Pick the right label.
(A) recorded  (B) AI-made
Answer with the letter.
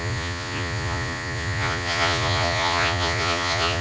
B